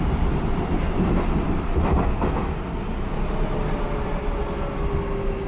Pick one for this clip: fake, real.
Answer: real